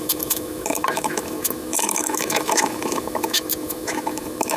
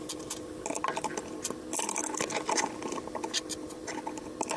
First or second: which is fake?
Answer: first